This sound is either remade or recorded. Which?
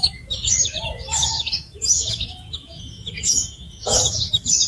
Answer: remade